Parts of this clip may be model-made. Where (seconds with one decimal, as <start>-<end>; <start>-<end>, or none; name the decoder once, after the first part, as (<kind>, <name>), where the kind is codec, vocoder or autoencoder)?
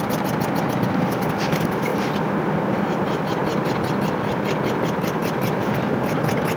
none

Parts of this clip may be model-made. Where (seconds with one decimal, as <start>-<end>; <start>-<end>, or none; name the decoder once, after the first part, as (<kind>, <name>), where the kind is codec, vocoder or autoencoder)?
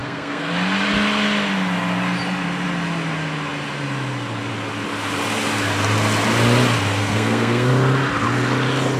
0.0-0.5 (codec, SNAC); 7.0-7.7